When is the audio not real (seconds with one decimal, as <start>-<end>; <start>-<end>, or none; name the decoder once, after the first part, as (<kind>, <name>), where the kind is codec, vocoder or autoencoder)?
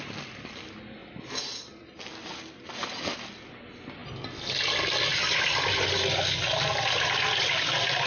none